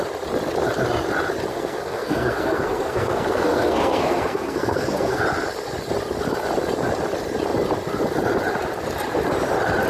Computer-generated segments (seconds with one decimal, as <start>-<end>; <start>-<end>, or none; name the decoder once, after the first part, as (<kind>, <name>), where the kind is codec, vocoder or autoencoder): 1.5-5.2 (codec, SNAC)